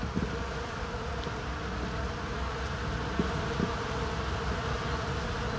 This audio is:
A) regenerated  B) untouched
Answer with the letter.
B